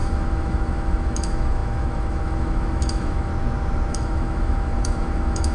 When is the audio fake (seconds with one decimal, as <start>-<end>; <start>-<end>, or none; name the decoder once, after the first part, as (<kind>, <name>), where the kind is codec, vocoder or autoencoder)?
0.0-3.3 (autoencoder, DAC-VAE); 3.9-5.5